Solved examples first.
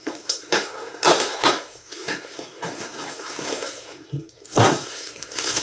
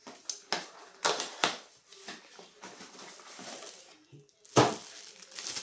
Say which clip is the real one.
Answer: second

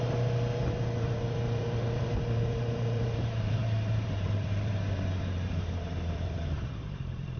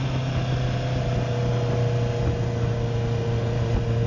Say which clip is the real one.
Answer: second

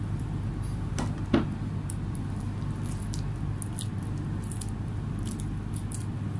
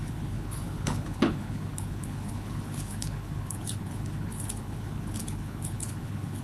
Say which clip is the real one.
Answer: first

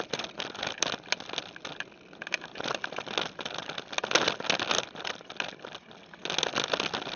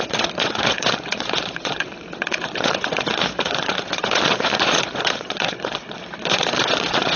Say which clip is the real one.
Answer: first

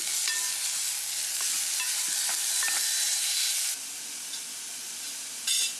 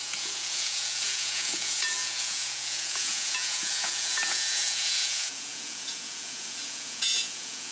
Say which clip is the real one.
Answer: first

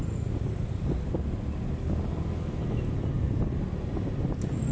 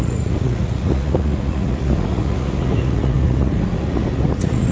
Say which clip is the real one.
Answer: first